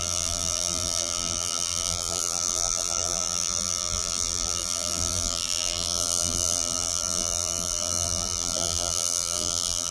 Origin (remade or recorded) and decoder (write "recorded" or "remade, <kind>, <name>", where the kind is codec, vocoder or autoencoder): remade, vocoder, BigVGAN v2